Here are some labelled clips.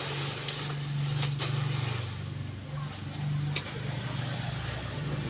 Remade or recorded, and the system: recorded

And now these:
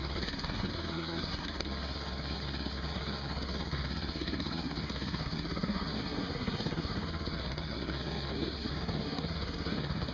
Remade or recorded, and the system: remade, codec, SNAC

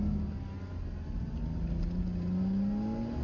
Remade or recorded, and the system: recorded